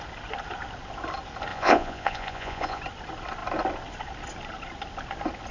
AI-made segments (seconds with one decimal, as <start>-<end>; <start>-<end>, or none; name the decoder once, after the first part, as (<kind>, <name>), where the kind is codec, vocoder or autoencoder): 1.5-2.8 (vocoder, Vocos)